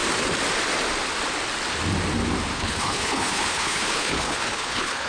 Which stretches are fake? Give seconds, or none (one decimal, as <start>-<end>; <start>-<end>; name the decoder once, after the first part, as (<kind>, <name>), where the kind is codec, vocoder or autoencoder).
2.5-5.1 (codec, HILCodec)